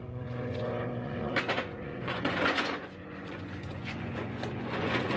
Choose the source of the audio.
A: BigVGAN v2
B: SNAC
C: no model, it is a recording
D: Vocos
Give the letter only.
D